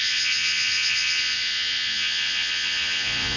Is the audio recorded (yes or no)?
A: no